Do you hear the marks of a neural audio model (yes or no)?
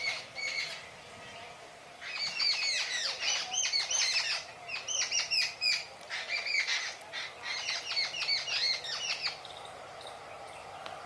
no